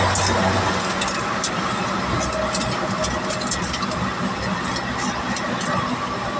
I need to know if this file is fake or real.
real